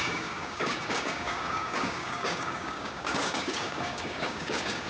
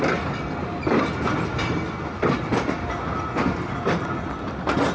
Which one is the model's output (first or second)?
first